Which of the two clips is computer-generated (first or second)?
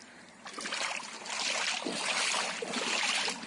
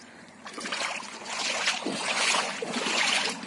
second